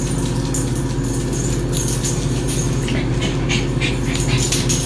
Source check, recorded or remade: recorded